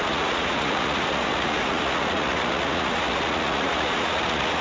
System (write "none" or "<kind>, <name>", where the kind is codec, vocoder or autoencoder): vocoder, Vocos